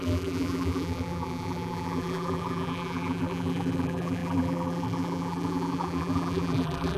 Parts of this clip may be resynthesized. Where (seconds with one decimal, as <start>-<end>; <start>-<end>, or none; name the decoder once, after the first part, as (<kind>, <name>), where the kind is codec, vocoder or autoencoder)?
0.0-7.0 (vocoder, BigVGAN v2)